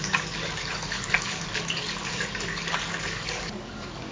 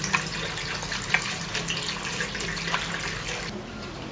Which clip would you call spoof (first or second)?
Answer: first